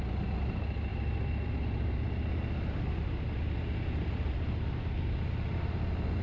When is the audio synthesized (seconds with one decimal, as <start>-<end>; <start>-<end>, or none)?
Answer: none